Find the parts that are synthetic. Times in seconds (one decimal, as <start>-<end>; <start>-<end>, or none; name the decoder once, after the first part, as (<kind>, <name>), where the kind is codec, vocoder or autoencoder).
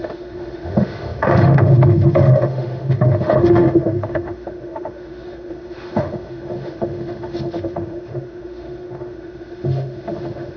0.0-10.6 (autoencoder, DAC-VAE)